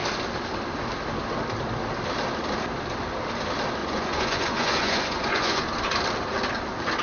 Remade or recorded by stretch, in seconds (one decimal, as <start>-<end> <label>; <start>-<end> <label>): 0.0-3.8 recorded; 3.8-5.6 remade; 5.6-7.0 recorded